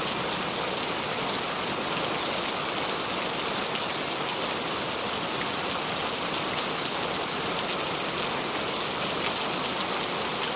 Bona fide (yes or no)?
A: yes